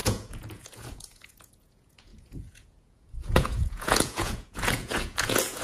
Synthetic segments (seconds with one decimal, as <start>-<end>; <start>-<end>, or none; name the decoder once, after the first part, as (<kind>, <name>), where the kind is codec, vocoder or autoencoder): 0.0-5.6 (vocoder, Vocos)